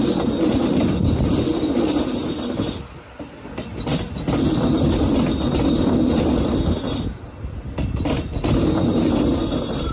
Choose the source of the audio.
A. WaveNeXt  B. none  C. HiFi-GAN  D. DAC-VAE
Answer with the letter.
B